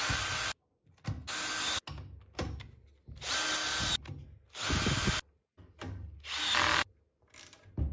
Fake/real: real